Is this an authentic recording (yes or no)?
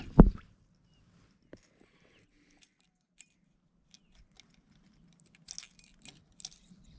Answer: yes